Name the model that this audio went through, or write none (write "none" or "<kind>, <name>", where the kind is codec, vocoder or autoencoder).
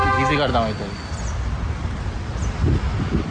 none